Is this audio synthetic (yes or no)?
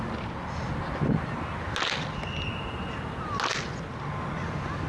no